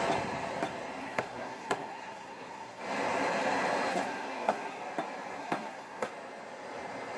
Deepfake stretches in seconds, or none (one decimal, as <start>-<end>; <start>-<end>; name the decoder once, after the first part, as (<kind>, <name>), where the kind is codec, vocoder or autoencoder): 1.0-2.8 (codec, SNAC); 3.9-4.8; 5.4-6.1